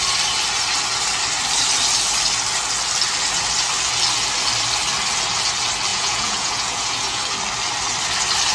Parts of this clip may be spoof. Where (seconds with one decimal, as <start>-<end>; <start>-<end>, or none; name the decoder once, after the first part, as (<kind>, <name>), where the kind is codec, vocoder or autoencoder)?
5.9-7.2 (vocoder, Vocos)